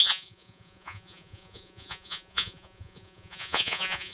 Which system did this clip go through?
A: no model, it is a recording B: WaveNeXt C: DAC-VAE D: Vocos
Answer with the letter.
D